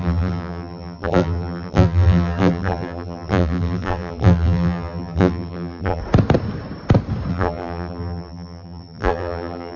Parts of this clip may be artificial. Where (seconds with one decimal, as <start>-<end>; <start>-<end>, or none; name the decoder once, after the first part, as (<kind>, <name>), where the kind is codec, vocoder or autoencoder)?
0.0-6.0 (vocoder, BigVGAN v2); 7.3-9.8